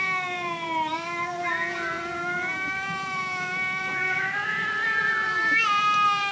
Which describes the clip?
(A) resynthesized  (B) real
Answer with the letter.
A